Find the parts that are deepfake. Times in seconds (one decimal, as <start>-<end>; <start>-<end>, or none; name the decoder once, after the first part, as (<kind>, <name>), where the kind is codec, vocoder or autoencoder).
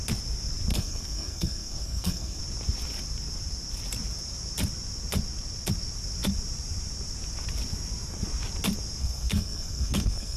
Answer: 0.7-2.4 (codec, SNAC); 9.0-10.4